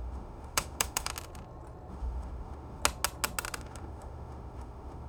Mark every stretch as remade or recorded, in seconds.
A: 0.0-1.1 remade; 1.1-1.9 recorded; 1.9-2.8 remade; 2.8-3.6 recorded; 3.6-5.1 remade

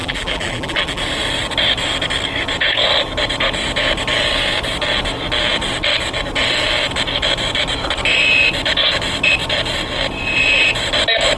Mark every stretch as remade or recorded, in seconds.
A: 0.0-1.0 remade; 1.0-11.4 recorded

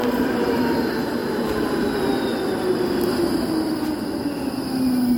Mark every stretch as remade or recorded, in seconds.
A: 0.0-0.6 remade; 0.6-1.2 recorded; 1.2-1.8 remade; 1.8-5.2 recorded

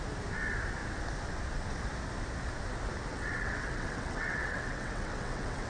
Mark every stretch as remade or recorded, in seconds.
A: 0.0-3.1 recorded; 3.1-5.7 remade